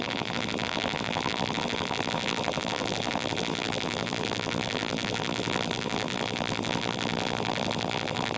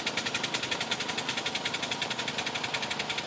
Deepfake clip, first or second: first